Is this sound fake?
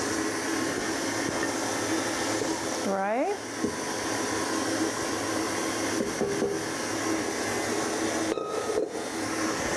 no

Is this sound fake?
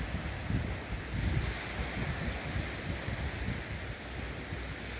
no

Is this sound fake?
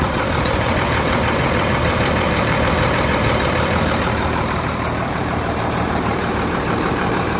yes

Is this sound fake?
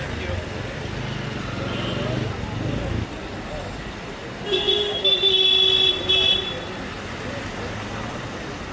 no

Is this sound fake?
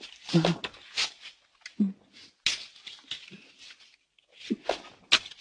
no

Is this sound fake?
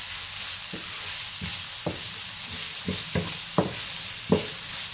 no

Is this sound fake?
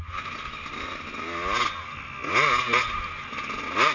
no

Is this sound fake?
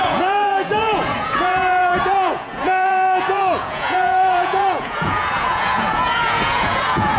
yes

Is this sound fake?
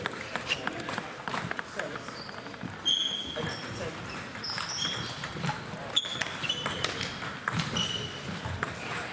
no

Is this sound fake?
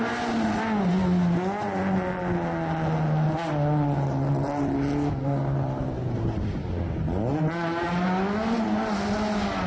no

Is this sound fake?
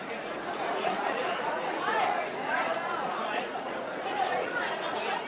yes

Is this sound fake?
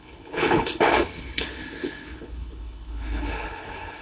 yes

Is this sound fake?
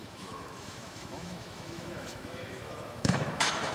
yes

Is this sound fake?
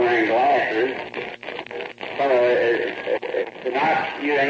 no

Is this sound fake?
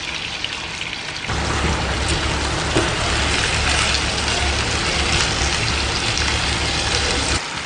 no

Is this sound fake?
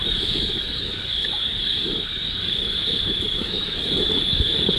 yes